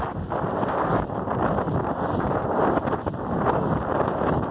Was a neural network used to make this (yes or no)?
yes